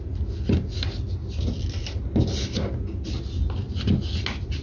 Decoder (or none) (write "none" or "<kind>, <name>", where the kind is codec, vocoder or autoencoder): none